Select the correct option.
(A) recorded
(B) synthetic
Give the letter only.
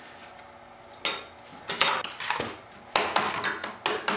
A